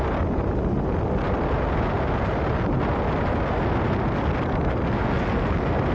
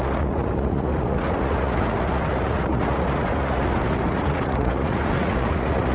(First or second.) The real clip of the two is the first